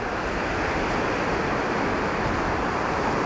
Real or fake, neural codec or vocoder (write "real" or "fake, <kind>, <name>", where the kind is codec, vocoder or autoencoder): real